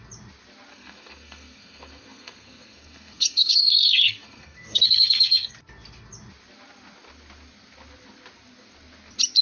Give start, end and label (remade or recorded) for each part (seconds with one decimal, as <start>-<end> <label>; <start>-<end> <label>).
0.0-0.7 recorded; 0.7-5.5 remade; 5.5-9.4 recorded